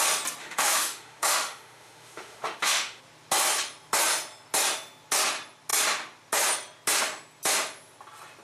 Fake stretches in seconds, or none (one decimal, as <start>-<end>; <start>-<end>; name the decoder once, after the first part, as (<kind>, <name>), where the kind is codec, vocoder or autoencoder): 0.4-3.0 (autoencoder, DAC-VAE)